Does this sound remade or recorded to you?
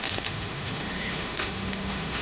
remade